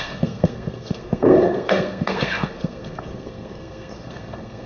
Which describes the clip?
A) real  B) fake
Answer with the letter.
B